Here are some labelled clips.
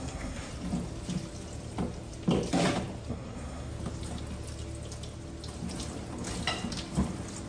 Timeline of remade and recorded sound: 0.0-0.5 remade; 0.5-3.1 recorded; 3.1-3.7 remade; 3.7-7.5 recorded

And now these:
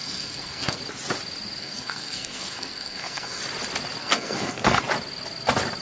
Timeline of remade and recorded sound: 0.0-0.8 remade; 0.8-1.6 recorded; 1.6-3.4 remade; 3.4-4.0 recorded; 4.0-4.8 remade; 4.8-5.8 recorded

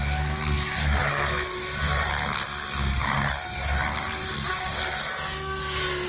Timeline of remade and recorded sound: 0.0-6.1 recorded